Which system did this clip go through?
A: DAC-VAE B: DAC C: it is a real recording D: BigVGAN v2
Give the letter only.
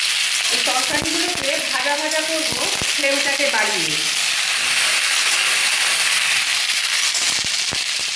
C